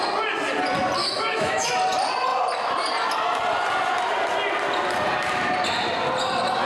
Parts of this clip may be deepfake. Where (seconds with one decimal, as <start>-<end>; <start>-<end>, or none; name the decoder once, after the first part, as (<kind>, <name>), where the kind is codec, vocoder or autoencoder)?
1.0-1.7 (autoencoder, DAC-VAE)

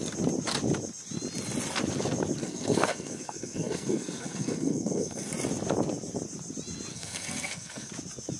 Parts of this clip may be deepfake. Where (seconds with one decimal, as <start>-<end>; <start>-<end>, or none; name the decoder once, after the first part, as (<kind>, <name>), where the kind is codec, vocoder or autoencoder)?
2.4-5.3 (codec, SNAC); 6.9-7.9

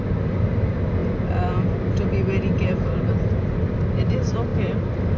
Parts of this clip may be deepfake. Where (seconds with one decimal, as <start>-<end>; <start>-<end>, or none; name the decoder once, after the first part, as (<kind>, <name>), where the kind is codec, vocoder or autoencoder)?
none

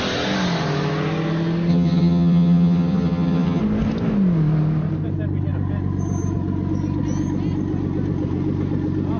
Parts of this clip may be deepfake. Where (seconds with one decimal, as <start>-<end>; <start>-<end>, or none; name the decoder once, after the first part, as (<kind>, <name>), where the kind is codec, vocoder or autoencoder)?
1.7-3.6 (vocoder, HiFi-GAN)

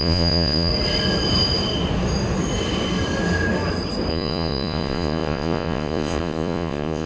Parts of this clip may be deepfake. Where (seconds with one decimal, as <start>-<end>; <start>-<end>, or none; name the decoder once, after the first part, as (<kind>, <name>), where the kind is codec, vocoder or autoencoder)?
0.0-0.7 (vocoder, Vocos); 4.1-7.1

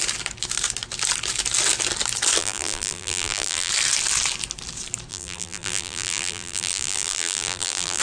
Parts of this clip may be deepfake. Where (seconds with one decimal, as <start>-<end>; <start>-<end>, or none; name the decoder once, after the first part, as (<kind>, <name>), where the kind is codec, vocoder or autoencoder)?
2.4-3.7 (vocoder, BigVGAN v2); 5.1-8.0

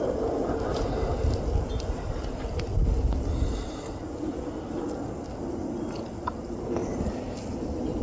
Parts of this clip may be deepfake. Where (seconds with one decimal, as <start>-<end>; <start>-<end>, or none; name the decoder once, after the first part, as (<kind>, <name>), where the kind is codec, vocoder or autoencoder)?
1.1-1.7 (vocoder, BigVGAN v2); 6.8-8.0

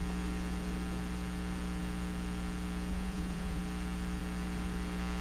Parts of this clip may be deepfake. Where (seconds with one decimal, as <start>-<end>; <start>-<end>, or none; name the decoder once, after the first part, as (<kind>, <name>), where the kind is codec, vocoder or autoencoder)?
2.9-3.6 (vocoder, Vocos)